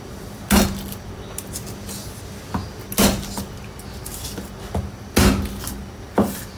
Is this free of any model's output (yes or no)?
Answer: yes